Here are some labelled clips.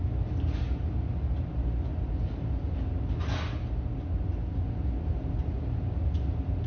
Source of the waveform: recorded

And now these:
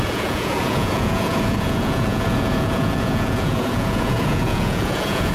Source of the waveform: remade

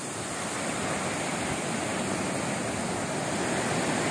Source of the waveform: recorded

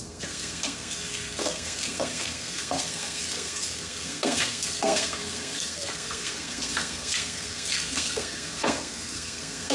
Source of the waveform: remade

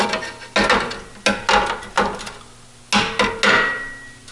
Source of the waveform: recorded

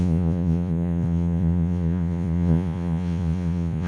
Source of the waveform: remade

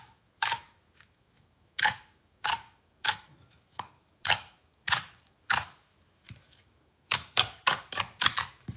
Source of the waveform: remade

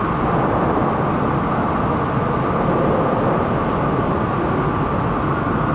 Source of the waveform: recorded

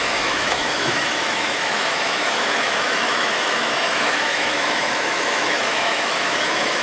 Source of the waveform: remade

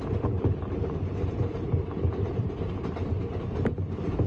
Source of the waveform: remade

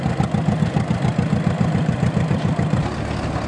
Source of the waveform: recorded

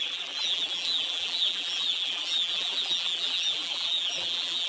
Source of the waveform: remade